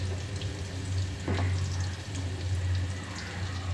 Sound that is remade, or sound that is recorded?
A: recorded